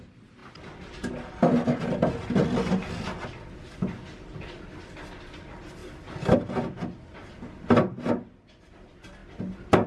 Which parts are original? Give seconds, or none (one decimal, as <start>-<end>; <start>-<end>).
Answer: 0.0-9.9